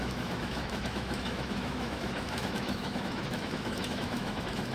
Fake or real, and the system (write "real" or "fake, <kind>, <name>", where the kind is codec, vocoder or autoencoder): fake, autoencoder, DAC-VAE